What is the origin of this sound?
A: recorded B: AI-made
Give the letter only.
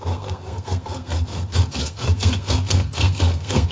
B